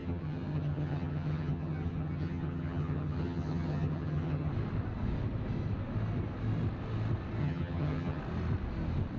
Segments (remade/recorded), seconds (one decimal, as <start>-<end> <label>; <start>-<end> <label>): 0.0-4.5 remade; 4.5-7.4 recorded; 7.4-8.2 remade; 8.2-9.2 recorded